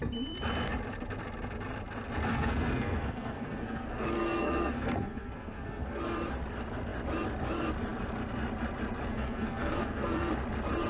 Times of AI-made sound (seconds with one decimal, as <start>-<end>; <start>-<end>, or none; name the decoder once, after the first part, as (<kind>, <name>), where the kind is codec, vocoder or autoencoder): 2.3-6.0 (codec, SNAC); 9.1-10.3

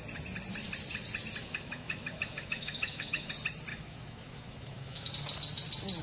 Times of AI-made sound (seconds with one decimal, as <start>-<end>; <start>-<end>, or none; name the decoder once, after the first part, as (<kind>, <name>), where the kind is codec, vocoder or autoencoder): 1.4-3.3 (autoencoder, DAC-VAE); 3.7-5.1

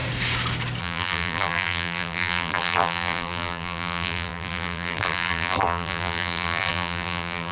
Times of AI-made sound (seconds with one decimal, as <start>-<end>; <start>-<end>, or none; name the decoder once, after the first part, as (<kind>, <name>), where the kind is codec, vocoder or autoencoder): 0.8-7.5 (vocoder, BigVGAN v2)

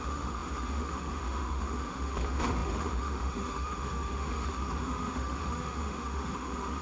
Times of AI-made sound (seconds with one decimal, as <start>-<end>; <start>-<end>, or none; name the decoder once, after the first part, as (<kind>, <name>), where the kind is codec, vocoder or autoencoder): 0.0-6.8 (autoencoder, DAC-VAE)

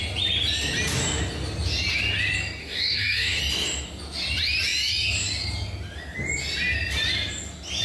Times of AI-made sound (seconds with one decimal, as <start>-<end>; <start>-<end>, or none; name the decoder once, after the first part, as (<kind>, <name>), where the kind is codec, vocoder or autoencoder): 2.6-3.4 (codec, DAC)

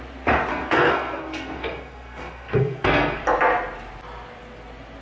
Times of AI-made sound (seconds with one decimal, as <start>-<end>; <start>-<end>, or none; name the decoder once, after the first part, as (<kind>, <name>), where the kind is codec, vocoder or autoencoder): 0.5-3.2 (codec, SNAC)

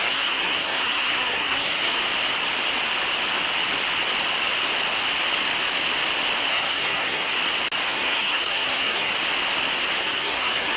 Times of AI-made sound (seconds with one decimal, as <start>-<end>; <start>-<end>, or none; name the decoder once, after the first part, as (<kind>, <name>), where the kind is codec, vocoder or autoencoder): 0.0-2.0 (codec, SNAC); 6.5-7.4; 7.9-9.1; 10.0-10.8

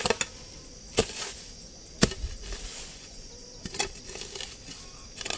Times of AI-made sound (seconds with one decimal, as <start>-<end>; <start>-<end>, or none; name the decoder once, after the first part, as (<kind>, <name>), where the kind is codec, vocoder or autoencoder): 1.0-1.7 (vocoder, Vocos); 2.7-3.3